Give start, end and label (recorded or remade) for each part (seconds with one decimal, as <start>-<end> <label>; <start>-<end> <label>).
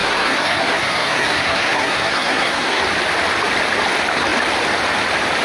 0.0-2.8 remade; 2.8-5.4 recorded